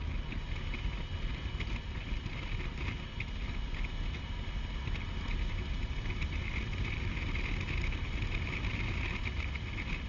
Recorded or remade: recorded